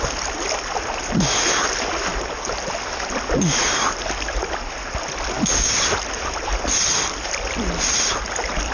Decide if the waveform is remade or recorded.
recorded